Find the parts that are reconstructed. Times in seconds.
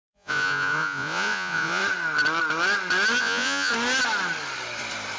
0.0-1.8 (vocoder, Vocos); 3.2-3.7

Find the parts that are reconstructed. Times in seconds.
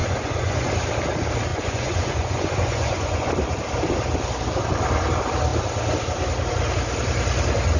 0.0-0.7 (vocoder, Vocos); 1.5-3.3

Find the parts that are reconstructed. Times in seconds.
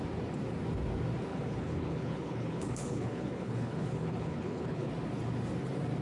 1.3-4.9 (codec, HILCodec)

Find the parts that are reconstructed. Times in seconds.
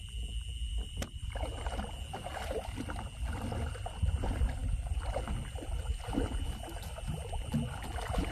0.7-1.9 (vocoder, BigVGAN v2)